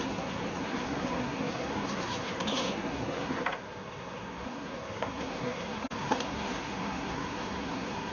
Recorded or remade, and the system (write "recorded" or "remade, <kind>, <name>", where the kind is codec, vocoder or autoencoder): remade, codec, SNAC